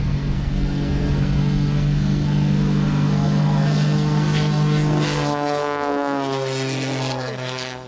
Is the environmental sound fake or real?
fake